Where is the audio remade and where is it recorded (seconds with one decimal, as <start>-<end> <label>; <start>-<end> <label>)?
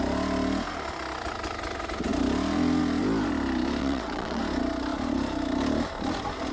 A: 0.0-3.8 recorded; 3.8-4.4 remade; 4.4-6.5 recorded